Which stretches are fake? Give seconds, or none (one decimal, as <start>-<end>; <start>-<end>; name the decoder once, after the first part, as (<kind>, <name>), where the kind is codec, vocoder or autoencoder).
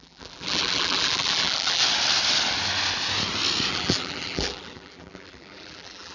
0.0-1.8 (vocoder, BigVGAN v2); 3.7-6.1